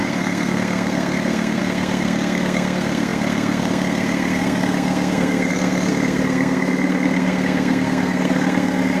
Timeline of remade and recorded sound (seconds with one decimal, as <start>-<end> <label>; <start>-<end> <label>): 0.0-9.0 remade